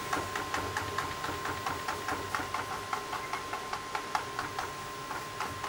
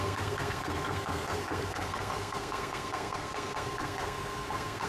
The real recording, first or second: first